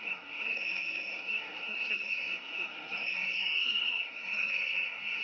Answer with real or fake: fake